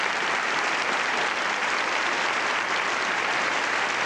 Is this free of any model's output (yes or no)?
no